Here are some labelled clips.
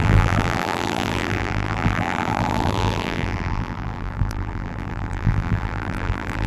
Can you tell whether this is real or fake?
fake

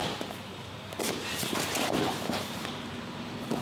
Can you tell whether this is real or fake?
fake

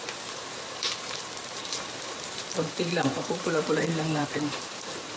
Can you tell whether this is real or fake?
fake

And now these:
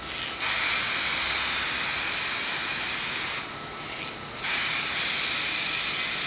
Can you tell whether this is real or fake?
real